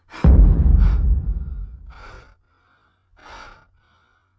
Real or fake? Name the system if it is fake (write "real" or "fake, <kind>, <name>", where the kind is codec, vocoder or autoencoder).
real